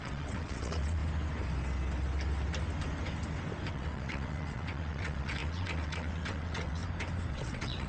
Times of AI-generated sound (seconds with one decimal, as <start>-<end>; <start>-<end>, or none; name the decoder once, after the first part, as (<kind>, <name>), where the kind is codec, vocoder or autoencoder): 0.0-1.0 (vocoder, WaveNeXt); 3.7-6.8; 7.3-7.9